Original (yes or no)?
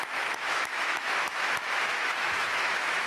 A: no